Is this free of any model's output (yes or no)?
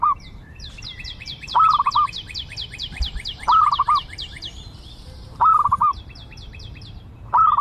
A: no